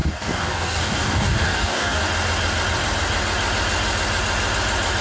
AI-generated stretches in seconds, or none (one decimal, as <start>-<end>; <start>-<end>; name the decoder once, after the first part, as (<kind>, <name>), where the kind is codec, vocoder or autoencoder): 0.0-2.0 (codec, DAC)